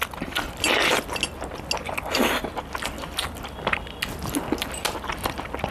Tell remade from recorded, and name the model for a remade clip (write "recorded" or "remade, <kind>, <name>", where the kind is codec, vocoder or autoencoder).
recorded